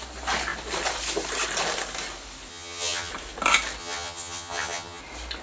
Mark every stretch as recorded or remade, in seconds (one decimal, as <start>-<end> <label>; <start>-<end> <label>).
0.0-2.5 recorded; 2.5-3.1 remade; 3.1-3.8 recorded; 3.8-5.0 remade; 5.0-5.4 recorded